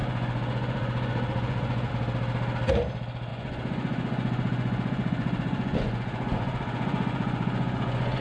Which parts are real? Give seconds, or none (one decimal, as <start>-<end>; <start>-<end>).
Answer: 1.9-3.3